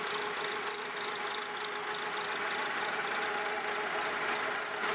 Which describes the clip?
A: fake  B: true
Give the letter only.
B